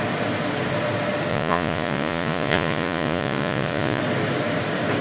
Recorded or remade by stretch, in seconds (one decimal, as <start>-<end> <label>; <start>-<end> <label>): 0.0-1.3 recorded; 1.3-4.0 remade; 4.0-5.0 recorded